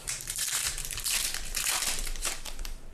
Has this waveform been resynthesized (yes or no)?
yes